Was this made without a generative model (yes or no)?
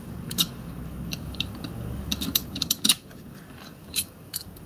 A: no